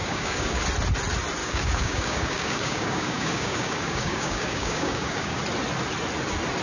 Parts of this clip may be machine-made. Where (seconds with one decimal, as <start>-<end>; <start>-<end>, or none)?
0.0-0.6; 1.4-5.4